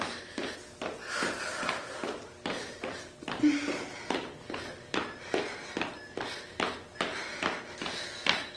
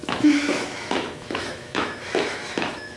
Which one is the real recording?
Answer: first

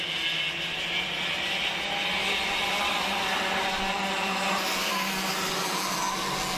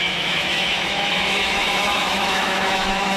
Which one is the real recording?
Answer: first